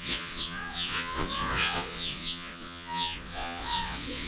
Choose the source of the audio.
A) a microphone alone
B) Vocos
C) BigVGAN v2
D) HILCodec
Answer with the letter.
B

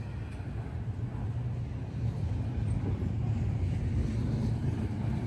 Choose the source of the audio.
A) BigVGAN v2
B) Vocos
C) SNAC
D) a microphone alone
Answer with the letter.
D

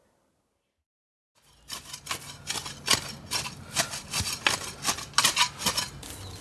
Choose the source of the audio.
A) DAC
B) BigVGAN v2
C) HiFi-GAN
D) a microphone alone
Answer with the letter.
D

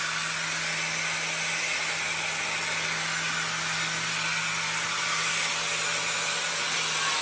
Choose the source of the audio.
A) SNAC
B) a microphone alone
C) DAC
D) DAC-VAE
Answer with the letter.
B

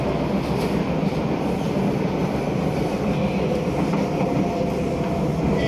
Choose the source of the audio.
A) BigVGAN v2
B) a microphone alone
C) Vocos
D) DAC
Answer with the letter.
B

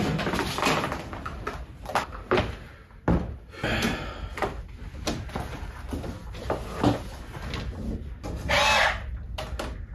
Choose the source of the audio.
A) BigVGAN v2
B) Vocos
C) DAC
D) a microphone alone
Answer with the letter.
D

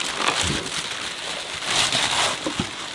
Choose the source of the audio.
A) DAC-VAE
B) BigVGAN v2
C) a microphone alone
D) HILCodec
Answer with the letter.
C